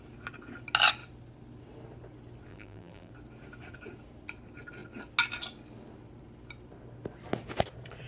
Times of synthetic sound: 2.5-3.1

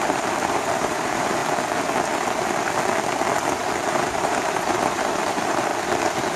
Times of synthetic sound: 0.0-1.4; 3.9-5.7